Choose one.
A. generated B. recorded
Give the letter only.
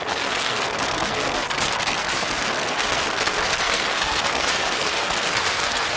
A